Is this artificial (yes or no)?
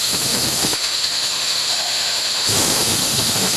yes